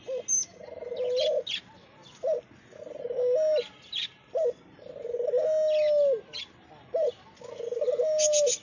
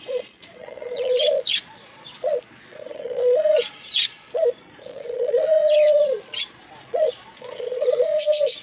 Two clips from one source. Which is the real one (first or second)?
first